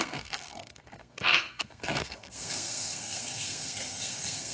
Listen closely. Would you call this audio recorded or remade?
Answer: remade